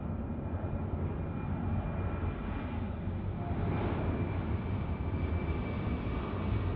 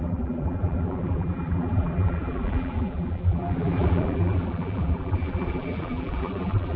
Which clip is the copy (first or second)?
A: second